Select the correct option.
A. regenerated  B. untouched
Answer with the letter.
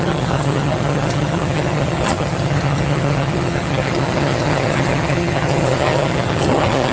A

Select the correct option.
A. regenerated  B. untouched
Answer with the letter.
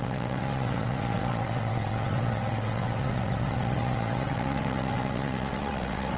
A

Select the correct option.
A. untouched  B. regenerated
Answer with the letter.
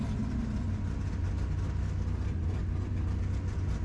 A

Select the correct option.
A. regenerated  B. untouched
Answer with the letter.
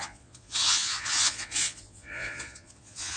A